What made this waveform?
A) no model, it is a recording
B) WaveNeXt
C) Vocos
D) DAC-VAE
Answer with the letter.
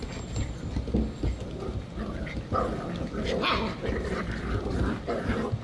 A